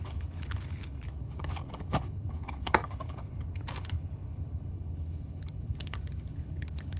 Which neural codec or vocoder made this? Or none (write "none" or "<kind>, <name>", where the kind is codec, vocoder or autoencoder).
codec, HILCodec